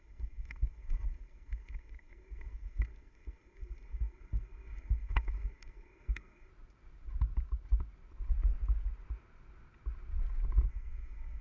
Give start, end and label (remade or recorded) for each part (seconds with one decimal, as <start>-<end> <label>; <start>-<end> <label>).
0.0-6.5 remade; 6.5-10.7 recorded; 10.7-11.4 remade